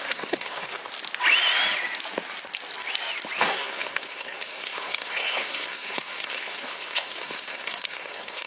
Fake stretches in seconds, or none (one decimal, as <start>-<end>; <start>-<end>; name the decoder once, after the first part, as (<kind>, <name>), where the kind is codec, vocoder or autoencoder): 0.0-0.8 (codec, SNAC); 3.4-8.5